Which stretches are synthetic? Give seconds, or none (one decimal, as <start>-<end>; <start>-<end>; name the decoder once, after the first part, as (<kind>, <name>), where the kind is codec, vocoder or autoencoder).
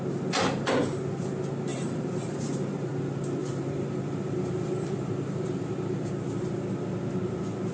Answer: 1.7-2.9 (vocoder, BigVGAN v2); 3.4-6.1